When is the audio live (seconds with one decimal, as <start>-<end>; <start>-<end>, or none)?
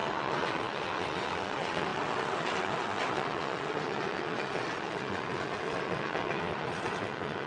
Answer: none